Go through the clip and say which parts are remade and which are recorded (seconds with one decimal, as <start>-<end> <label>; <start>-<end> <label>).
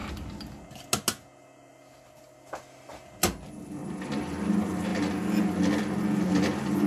0.0-6.9 recorded